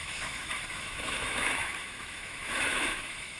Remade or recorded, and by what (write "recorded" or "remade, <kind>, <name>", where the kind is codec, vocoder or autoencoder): remade, autoencoder, DAC-VAE